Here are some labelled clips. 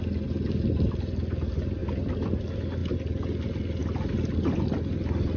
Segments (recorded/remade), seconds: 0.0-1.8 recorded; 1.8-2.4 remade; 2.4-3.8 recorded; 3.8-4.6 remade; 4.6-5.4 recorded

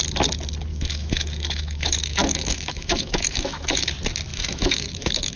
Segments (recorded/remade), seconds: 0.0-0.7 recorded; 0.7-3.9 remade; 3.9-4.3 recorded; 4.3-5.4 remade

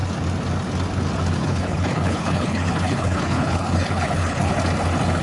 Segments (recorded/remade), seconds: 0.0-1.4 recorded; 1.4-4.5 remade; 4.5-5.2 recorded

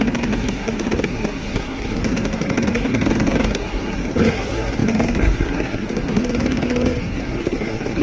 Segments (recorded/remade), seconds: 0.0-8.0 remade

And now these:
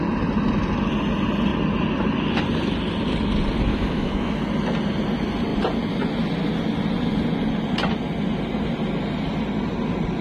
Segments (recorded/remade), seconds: 0.0-3.7 recorded; 3.7-4.4 remade; 4.4-10.2 recorded